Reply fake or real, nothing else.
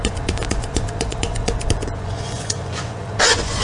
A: fake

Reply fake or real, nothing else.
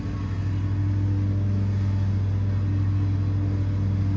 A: real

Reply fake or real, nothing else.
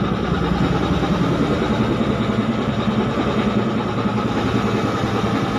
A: real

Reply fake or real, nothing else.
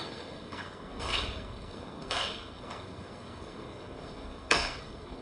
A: fake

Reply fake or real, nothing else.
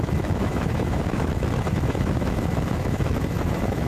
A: fake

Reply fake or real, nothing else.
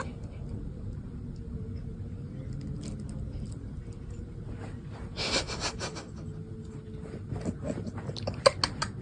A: real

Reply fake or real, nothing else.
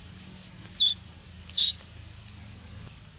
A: fake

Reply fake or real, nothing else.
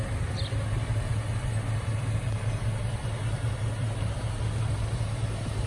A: real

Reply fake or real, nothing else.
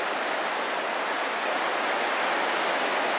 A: real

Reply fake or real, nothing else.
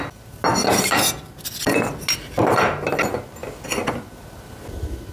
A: real